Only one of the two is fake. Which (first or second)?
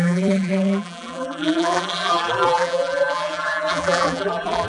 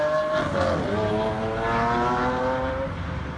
first